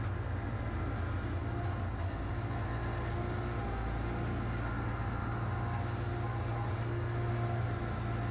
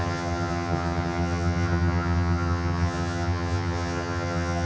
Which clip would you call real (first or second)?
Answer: first